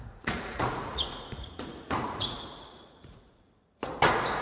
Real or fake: fake